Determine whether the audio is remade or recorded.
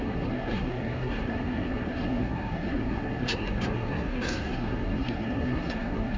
remade